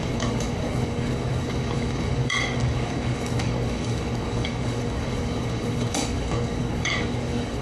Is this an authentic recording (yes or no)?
no